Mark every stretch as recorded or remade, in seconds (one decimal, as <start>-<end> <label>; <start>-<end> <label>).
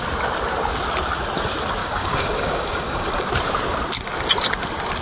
0.0-1.8 recorded; 1.8-3.1 remade; 3.1-5.0 recorded